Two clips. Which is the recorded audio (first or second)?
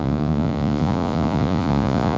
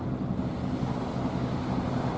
second